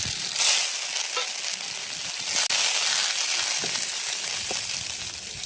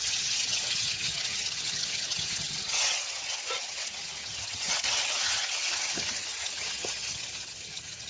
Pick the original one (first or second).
first